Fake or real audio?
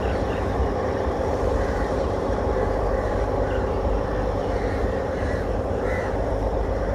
fake